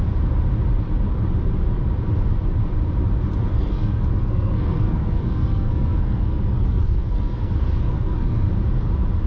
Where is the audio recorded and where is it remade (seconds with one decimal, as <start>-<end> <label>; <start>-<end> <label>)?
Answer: 0.0-3.5 recorded; 3.5-7.5 remade; 7.5-7.9 recorded; 7.9-8.5 remade; 8.5-9.3 recorded